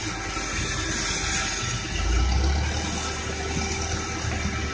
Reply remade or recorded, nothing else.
recorded